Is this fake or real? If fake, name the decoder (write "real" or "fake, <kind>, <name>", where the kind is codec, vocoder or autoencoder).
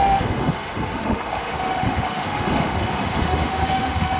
fake, autoencoder, DAC-VAE